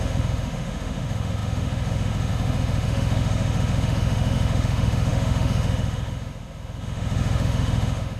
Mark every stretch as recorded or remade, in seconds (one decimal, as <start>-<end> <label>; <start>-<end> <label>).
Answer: 0.0-8.2 remade